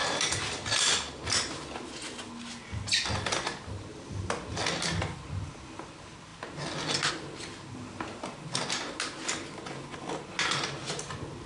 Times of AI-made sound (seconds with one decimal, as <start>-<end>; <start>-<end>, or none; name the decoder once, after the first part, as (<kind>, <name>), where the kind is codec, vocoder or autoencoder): none